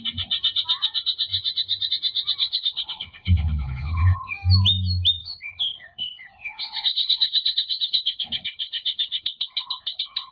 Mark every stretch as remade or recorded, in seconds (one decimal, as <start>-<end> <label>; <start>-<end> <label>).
0.0-2.4 recorded; 2.4-4.3 remade; 4.3-5.2 recorded; 5.2-10.3 remade